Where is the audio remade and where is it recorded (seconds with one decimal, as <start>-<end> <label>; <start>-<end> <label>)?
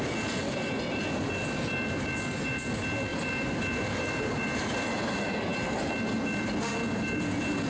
0.0-0.4 recorded; 0.4-1.0 remade; 1.0-3.1 recorded; 3.1-4.6 remade; 4.6-5.5 recorded; 5.5-6.2 remade; 6.2-7.7 recorded